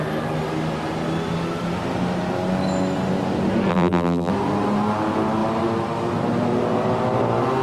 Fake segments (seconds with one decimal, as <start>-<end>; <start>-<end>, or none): 3.7-4.3